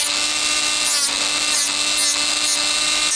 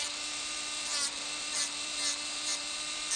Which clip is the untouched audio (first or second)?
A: first